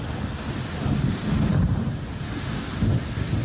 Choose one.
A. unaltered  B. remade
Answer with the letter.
A